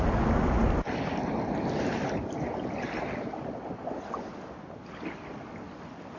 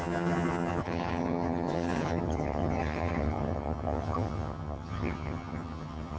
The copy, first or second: second